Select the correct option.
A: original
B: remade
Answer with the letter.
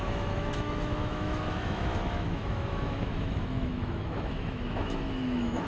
B